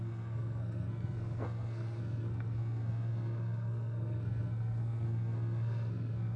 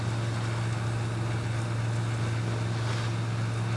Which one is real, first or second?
second